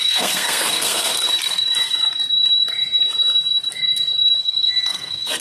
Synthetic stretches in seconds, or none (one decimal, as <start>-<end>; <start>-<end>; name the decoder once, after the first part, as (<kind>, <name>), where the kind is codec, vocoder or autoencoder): 0.0-1.2 (codec, SNAC); 4.4-5.4